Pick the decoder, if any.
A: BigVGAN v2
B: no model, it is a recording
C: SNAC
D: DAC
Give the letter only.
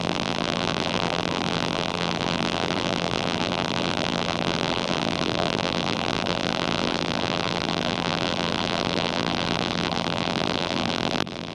A